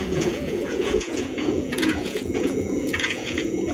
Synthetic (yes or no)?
yes